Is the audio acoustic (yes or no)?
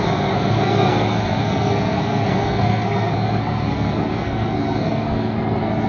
no